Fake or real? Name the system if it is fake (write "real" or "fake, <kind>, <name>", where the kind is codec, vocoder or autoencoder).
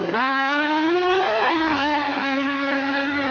fake, codec, SNAC